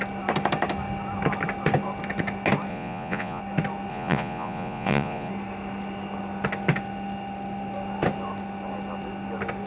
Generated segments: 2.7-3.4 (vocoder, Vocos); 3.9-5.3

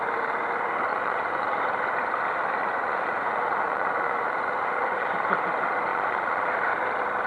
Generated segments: 0.9-1.6 (vocoder, Vocos); 2.6-5.1; 5.9-6.5